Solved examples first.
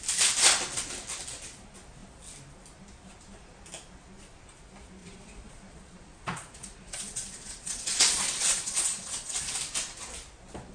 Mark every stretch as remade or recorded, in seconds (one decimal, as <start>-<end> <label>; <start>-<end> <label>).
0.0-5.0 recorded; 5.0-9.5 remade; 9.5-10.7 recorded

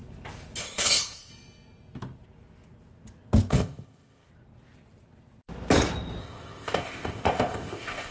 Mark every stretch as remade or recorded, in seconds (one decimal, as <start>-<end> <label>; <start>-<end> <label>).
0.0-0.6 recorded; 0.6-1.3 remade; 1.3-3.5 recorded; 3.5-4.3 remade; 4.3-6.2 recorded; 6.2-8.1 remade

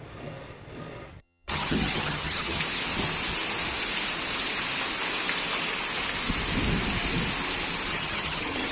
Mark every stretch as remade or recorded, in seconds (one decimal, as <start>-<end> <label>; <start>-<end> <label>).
0.0-1.1 recorded; 1.1-2.6 remade; 2.6-7.9 recorded; 7.9-8.7 remade